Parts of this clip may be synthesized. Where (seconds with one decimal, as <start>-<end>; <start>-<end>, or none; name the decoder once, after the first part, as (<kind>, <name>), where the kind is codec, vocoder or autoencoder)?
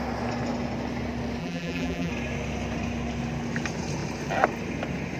1.4-2.1 (vocoder, BigVGAN v2)